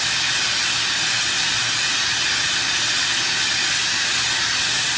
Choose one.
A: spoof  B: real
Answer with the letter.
B